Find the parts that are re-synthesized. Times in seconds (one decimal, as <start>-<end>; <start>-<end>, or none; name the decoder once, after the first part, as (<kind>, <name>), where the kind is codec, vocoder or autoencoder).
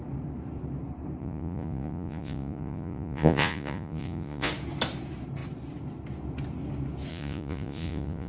1.2-4.5 (vocoder, Vocos); 7.1-8.3